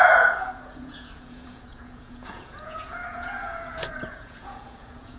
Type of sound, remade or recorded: remade